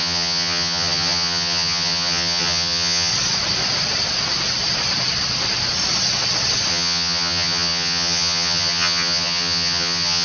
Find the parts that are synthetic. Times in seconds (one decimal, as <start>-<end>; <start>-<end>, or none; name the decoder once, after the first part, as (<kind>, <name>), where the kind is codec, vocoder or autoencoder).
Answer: 0.0-3.1 (vocoder, HiFi-GAN); 6.7-10.2